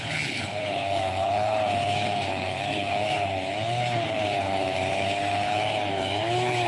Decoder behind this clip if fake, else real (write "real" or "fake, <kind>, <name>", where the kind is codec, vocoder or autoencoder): fake, codec, HILCodec